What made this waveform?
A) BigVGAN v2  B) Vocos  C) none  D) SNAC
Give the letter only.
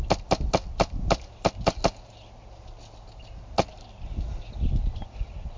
C